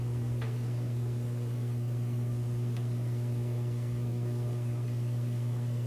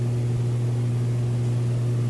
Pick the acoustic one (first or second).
second